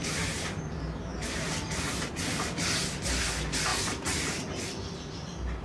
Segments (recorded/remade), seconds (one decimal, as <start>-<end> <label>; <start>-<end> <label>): 0.0-5.6 recorded

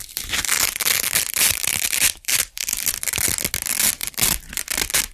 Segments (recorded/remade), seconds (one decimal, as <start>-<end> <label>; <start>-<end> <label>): 0.0-3.1 remade; 3.1-4.0 recorded; 4.0-4.6 remade; 4.6-5.1 recorded